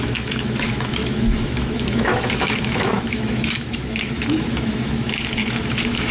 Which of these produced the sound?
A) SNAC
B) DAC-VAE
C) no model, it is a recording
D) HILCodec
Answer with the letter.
B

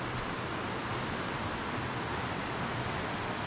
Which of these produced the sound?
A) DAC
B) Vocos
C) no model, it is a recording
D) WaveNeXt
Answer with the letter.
C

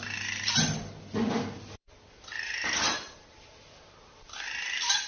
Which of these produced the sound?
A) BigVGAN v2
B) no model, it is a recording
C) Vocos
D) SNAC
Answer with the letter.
A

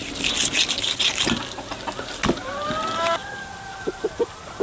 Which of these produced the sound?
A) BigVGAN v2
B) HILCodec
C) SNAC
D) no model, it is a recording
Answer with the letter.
D